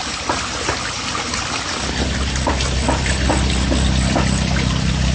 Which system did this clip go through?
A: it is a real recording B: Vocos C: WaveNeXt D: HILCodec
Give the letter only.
A